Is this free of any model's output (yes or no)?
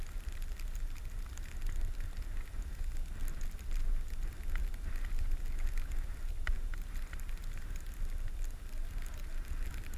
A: yes